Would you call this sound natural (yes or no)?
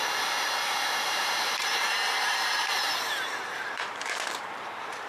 no